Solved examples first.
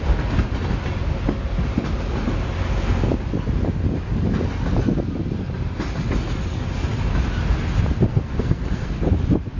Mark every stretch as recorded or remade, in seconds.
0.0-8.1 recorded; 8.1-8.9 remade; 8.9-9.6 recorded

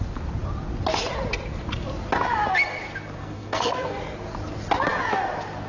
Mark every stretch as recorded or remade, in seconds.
0.0-3.2 recorded; 3.2-4.0 remade; 4.0-5.7 recorded

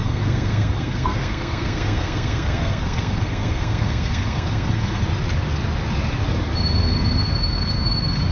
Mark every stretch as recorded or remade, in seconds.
0.0-5.0 remade; 5.0-8.3 recorded

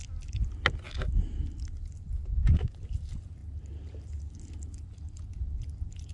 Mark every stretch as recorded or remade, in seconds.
0.0-6.1 recorded

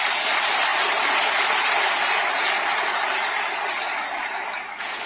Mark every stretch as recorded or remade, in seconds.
0.0-5.1 recorded

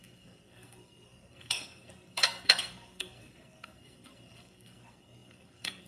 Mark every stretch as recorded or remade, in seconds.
0.0-5.9 remade

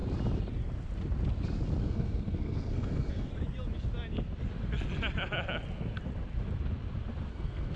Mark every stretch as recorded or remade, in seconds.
0.0-1.8 recorded; 1.8-3.3 remade; 3.3-7.3 recorded; 7.3-7.8 remade